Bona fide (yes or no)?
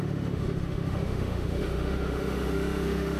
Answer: no